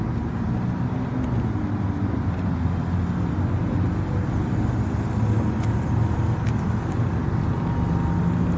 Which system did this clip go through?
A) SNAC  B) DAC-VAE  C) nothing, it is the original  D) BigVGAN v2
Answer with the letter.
C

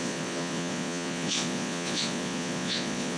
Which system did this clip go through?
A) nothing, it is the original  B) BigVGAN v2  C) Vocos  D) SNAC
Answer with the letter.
C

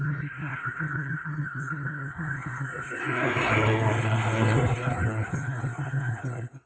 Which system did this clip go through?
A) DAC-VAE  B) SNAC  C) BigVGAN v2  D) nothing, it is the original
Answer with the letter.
B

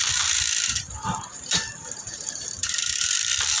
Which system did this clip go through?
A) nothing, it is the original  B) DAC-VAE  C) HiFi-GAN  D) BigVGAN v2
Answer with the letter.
D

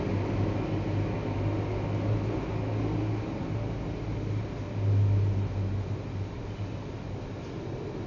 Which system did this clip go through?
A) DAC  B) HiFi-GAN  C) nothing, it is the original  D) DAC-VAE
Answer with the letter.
C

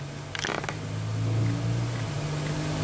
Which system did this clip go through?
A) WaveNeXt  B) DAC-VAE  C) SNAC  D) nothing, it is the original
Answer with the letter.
D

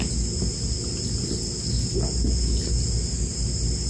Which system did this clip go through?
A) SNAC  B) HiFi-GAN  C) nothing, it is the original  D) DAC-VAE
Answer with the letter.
C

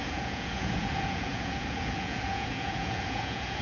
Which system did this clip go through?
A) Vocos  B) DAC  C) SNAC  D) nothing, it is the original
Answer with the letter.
A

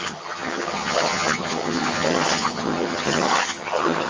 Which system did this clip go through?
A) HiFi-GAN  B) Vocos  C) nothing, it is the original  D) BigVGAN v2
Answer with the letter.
A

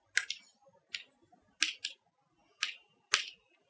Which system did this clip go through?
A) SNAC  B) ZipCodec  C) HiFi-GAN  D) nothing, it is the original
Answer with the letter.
D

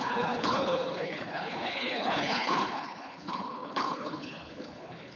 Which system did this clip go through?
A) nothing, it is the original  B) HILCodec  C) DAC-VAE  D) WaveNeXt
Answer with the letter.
B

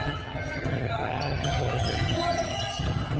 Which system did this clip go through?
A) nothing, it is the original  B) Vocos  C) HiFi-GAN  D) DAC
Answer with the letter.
C